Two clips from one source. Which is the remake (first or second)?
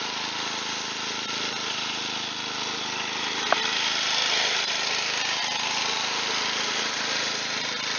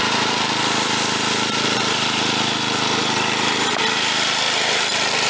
second